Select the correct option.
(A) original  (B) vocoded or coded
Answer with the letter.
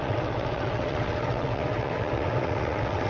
B